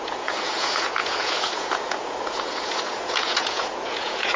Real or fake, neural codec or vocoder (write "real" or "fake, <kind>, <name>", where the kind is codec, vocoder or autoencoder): fake, vocoder, Vocos